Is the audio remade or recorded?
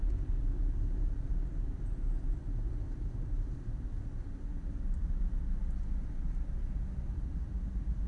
remade